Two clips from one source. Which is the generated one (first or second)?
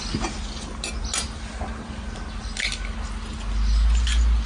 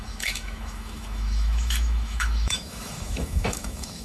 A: second